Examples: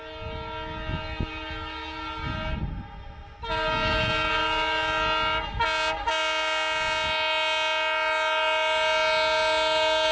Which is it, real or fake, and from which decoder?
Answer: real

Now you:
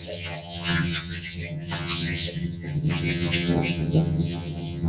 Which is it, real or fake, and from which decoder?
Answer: fake, vocoder, HiFi-GAN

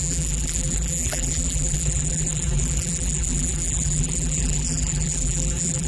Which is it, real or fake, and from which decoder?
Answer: fake, vocoder, BigVGAN v2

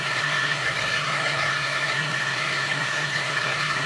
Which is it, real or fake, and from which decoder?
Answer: fake, codec, SNAC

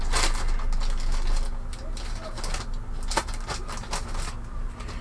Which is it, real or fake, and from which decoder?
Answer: real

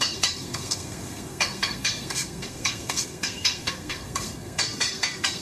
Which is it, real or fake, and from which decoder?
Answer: fake, codec, SNAC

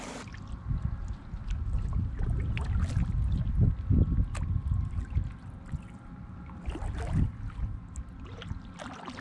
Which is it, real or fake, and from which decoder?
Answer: real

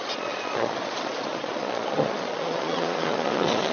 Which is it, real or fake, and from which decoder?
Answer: fake, vocoder, Vocos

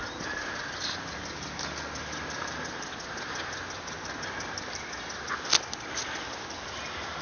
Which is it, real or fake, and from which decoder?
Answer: real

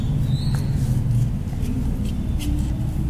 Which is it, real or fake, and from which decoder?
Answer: real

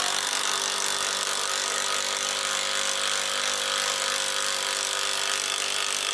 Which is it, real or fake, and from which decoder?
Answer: real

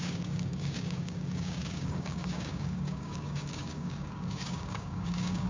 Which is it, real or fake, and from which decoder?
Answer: fake, codec, DAC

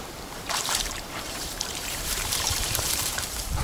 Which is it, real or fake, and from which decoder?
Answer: fake, vocoder, BigVGAN v2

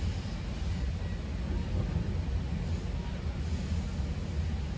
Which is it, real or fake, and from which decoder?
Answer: real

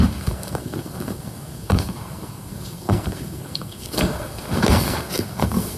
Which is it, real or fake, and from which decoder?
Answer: fake, codec, SNAC